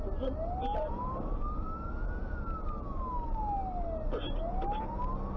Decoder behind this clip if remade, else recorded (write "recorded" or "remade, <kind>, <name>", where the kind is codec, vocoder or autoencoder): recorded